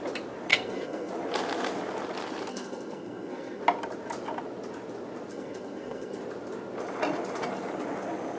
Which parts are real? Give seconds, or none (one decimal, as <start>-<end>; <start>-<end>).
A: 0.0-0.5; 1.1-2.5; 3.6-5.3; 6.2-8.4